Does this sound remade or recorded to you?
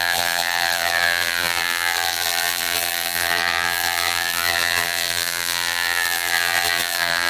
remade